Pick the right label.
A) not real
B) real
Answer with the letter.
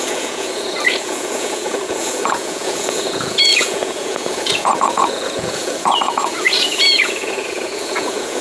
A